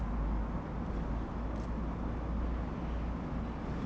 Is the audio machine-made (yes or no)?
no